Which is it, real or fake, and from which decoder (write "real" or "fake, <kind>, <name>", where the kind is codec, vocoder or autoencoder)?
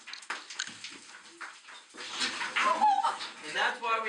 real